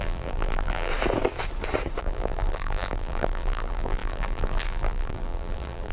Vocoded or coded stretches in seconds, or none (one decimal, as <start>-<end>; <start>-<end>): 0.0-0.9; 2.0-5.9

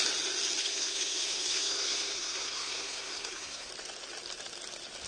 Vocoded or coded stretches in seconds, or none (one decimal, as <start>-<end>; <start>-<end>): 0.6-3.7

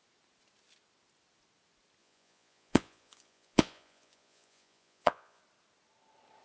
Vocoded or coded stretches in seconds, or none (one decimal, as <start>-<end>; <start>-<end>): 2.0-5.4

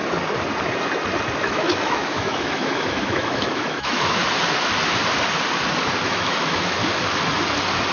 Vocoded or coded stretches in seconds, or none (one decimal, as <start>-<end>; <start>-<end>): 1.4-4.2; 6.0-6.8

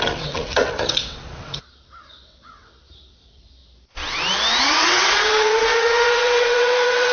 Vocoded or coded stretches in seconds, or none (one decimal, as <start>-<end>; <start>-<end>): 0.0-3.6; 4.6-7.1

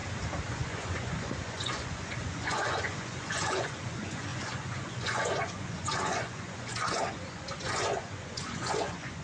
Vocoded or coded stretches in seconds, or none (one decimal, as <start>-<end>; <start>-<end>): 0.5-9.2

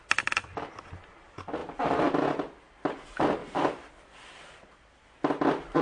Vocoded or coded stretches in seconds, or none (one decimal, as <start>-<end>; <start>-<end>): 1.6-2.2; 3.4-4.4